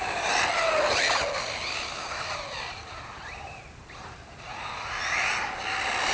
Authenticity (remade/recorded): recorded